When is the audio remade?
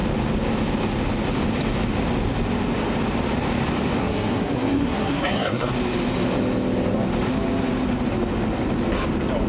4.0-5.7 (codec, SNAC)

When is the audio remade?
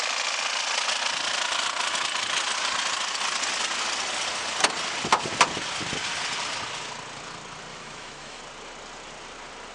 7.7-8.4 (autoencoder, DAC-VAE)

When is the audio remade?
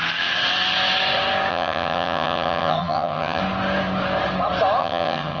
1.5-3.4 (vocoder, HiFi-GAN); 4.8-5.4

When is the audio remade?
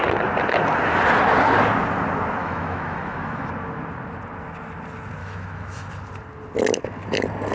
2.4-3.5 (autoencoder, DAC-VAE); 5.2-5.9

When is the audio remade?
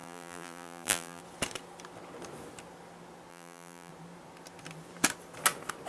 0.0-1.2 (vocoder, BigVGAN v2); 3.3-3.9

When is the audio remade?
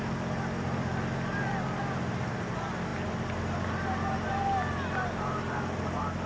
none